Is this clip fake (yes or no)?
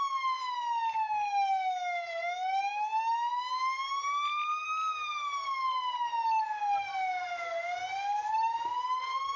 no